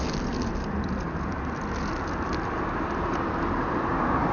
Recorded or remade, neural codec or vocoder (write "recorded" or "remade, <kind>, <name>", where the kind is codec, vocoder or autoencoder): recorded